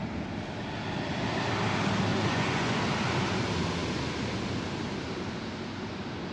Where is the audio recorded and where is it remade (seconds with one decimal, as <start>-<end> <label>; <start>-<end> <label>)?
0.0-2.1 recorded; 2.1-2.8 remade; 2.8-6.3 recorded